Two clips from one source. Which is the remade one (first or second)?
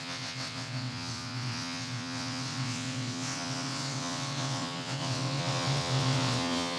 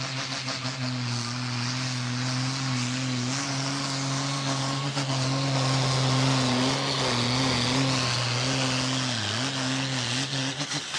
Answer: first